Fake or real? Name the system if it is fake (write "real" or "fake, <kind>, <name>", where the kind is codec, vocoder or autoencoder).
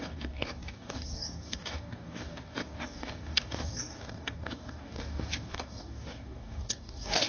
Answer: fake, codec, DAC